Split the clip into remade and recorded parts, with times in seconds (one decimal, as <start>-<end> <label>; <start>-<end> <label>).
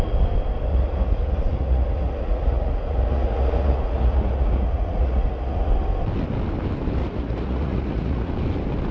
0.0-0.7 recorded; 0.7-5.7 remade; 5.7-7.0 recorded; 7.0-8.3 remade; 8.3-8.9 recorded